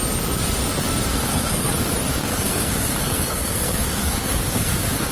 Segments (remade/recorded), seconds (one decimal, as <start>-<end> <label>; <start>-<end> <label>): 0.0-1.1 recorded; 1.1-1.7 remade; 1.7-2.3 recorded; 2.3-5.1 remade